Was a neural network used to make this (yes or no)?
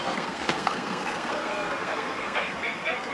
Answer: yes